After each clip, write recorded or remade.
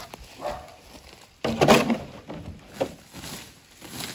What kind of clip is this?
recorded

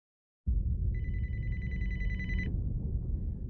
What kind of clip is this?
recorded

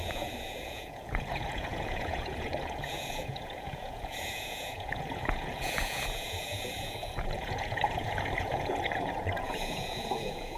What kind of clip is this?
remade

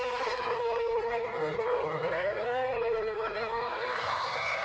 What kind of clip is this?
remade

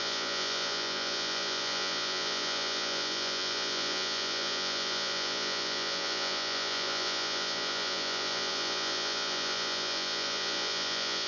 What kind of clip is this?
remade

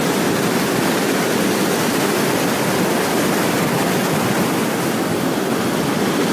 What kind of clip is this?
recorded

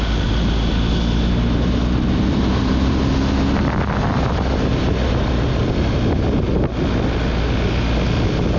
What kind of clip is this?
recorded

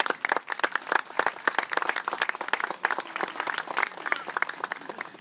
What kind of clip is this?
recorded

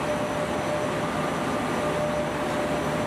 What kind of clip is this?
recorded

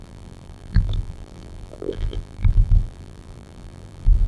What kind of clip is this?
remade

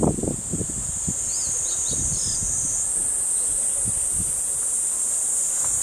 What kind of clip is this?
recorded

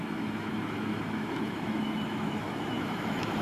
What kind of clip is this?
remade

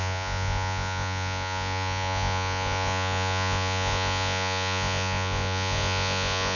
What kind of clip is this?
remade